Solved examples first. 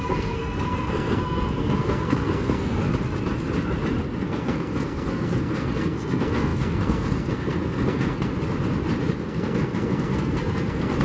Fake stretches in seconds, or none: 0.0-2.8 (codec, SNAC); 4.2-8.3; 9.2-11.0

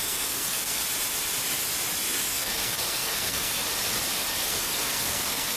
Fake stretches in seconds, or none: 0.0-0.8 (codec, SNAC); 2.3-3.6; 4.4-5.6